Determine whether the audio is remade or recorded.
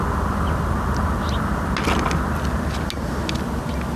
recorded